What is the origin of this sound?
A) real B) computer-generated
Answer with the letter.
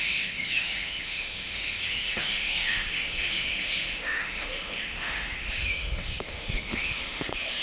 B